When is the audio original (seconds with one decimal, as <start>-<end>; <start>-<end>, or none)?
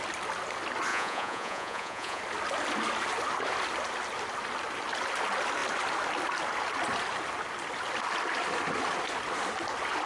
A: 0.0-0.9; 2.2-10.1